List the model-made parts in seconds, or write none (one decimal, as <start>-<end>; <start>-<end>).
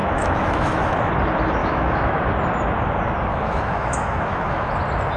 0.0-1.1; 1.6-2.2; 3.3-4.7